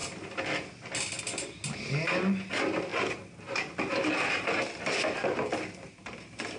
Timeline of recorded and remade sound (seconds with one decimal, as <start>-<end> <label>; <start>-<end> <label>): 0.0-6.6 recorded